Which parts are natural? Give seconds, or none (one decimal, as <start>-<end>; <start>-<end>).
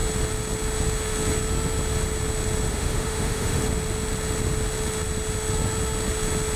0.0-2.7; 3.6-6.6